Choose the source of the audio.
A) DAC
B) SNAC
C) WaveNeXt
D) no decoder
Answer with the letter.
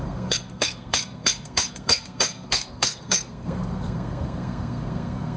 B